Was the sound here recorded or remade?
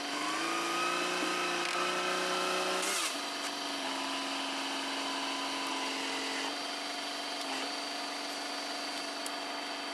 recorded